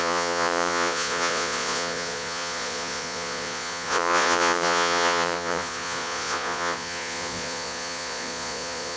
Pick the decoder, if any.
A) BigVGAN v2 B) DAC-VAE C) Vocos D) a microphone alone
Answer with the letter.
C